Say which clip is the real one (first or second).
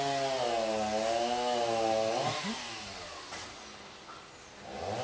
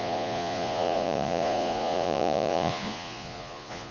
first